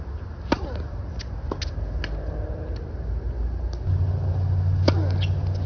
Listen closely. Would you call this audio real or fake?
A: real